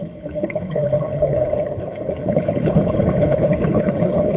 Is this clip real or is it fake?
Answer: fake